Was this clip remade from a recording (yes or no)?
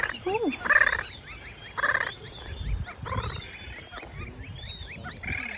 no